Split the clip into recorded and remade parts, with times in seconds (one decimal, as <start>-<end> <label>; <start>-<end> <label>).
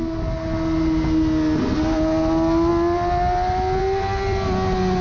0.0-5.0 recorded